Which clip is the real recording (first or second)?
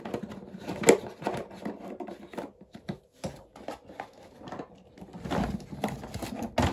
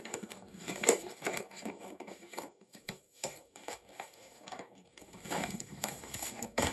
first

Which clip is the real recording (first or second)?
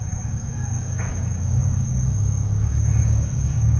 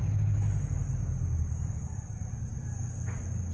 second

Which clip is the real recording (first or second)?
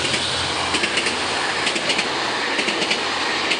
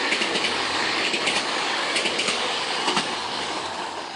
first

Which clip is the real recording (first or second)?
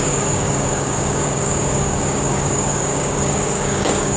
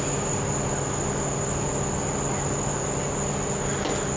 second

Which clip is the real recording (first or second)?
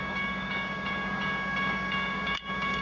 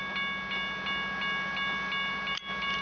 second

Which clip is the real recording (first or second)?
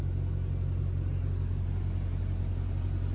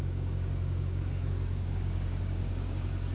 first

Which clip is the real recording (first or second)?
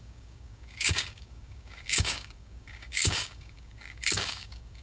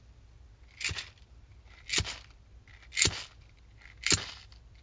second